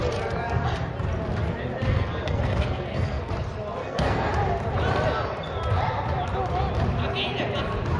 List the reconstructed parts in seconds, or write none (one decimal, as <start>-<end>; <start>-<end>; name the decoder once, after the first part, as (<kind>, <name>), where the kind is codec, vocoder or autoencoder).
1.9-3.3 (codec, SNAC); 3.8-4.3